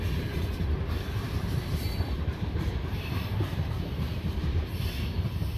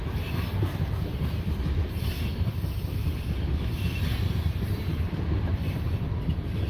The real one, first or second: second